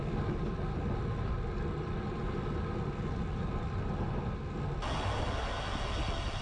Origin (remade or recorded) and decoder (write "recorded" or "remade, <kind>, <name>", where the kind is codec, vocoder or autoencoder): recorded